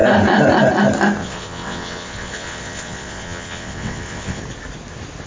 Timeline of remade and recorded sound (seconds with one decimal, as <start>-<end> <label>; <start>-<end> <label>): 0.0-1.2 recorded; 1.2-4.4 remade; 4.4-5.3 recorded